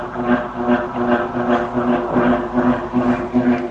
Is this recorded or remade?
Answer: recorded